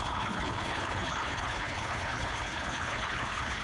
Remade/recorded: remade